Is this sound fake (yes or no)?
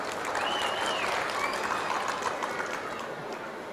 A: no